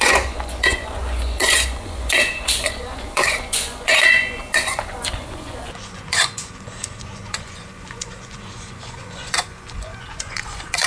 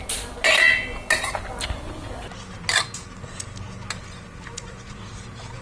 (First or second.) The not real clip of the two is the first